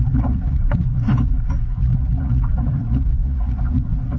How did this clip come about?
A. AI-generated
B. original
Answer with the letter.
A